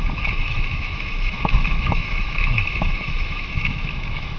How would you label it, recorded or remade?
remade